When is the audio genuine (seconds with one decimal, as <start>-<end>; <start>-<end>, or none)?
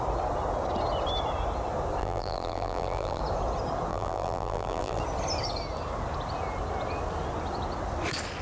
0.0-2.0; 3.2-3.9; 5.0-8.4